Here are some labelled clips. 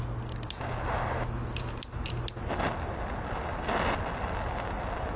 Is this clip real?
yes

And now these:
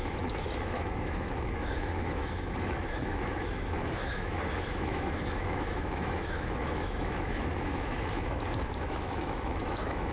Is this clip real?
no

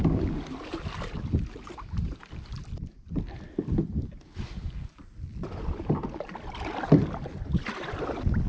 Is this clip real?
yes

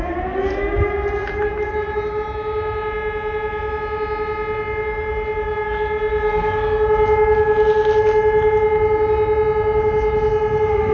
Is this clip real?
yes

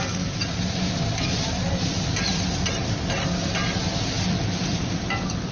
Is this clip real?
no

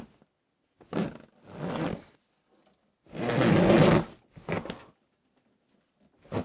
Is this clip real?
yes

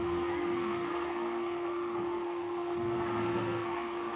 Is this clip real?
no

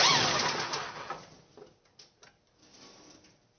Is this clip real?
yes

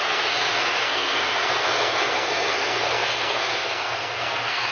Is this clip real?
no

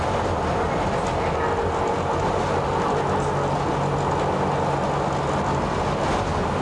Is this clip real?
yes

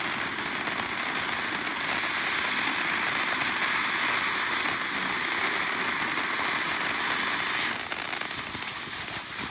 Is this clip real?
yes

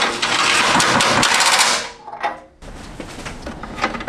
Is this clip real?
yes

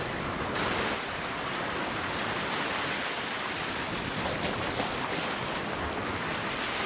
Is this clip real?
yes